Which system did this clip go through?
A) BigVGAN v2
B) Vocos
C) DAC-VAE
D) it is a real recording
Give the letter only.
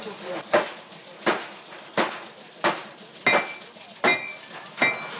D